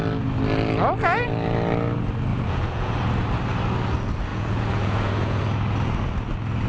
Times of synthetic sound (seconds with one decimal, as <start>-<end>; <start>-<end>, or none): 2.3-2.9; 4.3-5.4